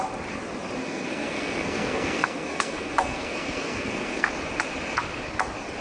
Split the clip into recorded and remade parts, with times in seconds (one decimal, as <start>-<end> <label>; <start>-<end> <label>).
0.0-0.8 recorded; 0.8-4.3 remade; 4.3-5.8 recorded